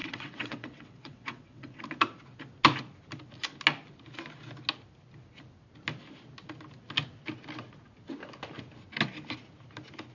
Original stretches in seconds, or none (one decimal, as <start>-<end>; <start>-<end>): 1.8-10.1